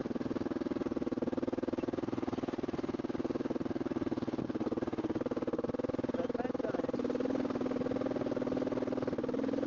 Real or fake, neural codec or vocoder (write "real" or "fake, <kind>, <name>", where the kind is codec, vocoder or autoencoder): real